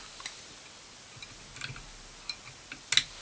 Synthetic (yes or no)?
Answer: no